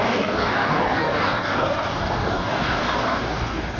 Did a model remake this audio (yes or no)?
yes